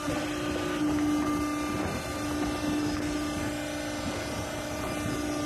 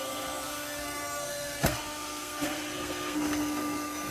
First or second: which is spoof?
second